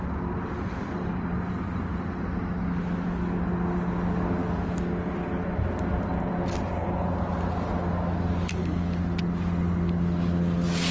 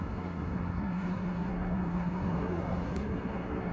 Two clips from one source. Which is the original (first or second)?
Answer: first